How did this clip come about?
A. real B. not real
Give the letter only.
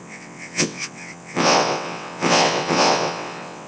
B